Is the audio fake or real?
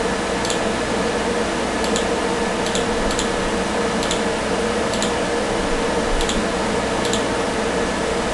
real